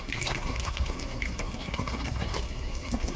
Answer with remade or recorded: remade